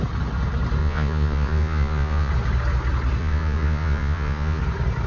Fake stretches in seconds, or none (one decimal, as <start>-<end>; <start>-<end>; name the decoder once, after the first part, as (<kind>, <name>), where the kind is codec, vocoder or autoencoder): 0.8-2.3 (vocoder, Vocos); 3.2-4.6

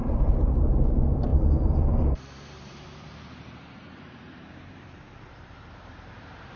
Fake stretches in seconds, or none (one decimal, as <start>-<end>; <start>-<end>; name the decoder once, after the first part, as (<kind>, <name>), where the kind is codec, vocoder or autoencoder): 0.0-6.6 (vocoder, BigVGAN v2)

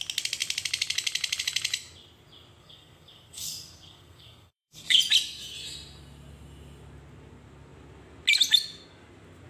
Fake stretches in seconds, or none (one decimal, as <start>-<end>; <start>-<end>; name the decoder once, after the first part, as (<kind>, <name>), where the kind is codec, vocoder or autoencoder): 2.6-5.0 (codec, SNAC)

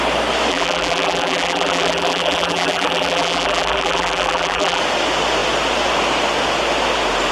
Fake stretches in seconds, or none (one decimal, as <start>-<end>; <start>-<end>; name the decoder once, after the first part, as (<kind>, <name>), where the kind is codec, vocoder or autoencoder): 0.5-4.8 (vocoder, BigVGAN v2)

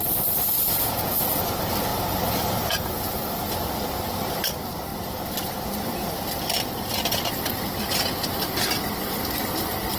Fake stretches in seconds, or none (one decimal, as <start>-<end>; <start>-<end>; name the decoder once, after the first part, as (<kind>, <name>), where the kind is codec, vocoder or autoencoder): none

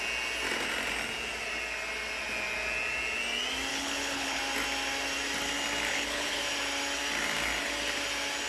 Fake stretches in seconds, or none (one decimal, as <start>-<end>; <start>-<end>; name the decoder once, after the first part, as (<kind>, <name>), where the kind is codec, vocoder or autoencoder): 3.7-4.4 (codec, HILCodec); 5.9-6.4

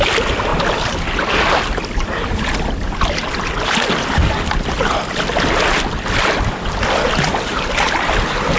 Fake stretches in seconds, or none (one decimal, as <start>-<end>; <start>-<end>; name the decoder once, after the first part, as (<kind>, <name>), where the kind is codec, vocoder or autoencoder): none

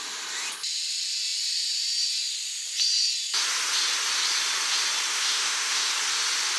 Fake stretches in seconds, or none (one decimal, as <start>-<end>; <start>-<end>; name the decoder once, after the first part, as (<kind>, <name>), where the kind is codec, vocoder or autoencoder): 5.1-5.9 (autoencoder, DAC-VAE)